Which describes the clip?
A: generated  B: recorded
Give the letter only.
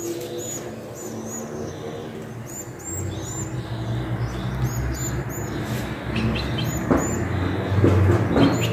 B